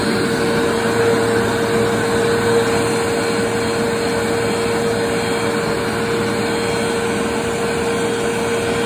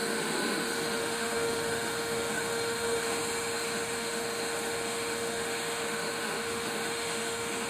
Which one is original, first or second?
first